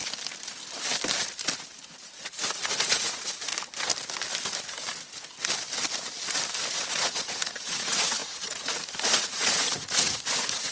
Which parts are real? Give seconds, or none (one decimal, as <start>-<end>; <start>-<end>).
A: 0.0-1.9; 3.5-6.9